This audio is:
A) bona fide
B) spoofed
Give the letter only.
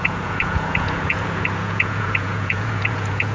B